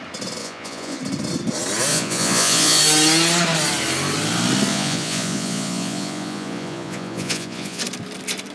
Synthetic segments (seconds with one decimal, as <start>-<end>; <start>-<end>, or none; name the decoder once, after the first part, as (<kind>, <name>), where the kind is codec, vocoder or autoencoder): 0.4-1.0 (vocoder, Vocos); 1.9-2.8; 4.7-7.8